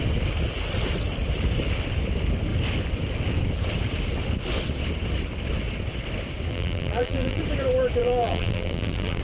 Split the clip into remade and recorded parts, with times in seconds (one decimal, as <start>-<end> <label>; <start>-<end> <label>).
0.0-6.5 recorded; 6.5-7.4 remade; 7.4-8.0 recorded; 8.0-9.2 remade